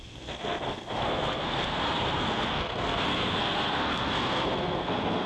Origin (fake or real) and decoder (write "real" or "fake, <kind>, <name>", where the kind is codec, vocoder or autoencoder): fake, codec, SNAC